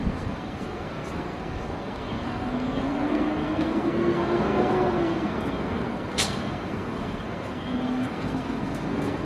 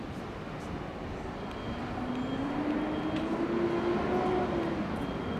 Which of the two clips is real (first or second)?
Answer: second